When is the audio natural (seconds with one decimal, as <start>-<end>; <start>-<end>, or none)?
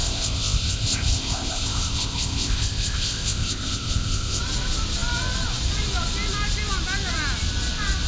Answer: 4.4-8.1